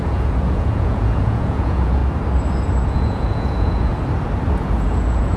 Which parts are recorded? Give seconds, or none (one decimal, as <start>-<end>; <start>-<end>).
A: 2.0-2.9; 3.9-4.6